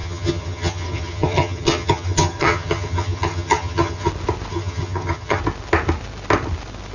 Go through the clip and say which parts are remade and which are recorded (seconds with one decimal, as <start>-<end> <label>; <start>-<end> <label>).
0.0-4.1 remade; 4.1-4.5 recorded; 4.5-5.4 remade; 5.4-6.9 recorded

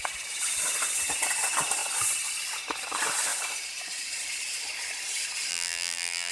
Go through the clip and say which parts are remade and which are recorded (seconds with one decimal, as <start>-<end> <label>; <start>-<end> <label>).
0.0-5.5 recorded; 5.5-6.3 remade